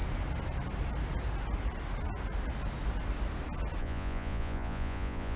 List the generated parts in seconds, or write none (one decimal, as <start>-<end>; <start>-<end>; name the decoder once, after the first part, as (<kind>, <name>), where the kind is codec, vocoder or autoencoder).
3.8-5.4 (vocoder, Vocos)